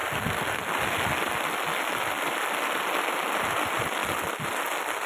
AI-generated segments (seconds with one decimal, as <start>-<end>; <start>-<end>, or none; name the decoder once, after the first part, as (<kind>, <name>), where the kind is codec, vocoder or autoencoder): none